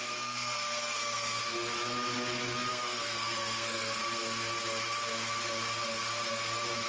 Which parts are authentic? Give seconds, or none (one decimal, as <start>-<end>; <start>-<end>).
1.4-2.7; 4.0-6.9